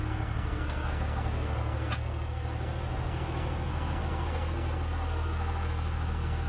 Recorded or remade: remade